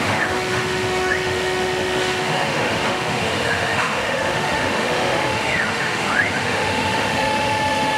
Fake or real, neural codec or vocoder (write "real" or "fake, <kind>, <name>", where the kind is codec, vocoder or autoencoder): fake, autoencoder, DAC-VAE